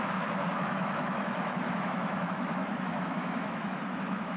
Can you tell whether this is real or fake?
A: fake